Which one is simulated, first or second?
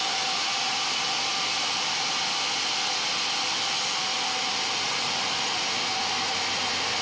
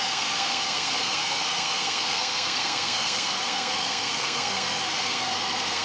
second